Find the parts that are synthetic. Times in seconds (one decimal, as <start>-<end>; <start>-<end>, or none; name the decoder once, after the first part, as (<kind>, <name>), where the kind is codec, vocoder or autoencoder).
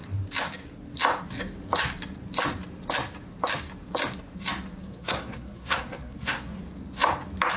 4.8-6.6 (codec, SNAC)